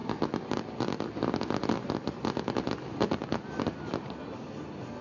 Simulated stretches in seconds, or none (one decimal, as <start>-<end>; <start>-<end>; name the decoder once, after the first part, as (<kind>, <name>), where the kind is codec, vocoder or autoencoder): none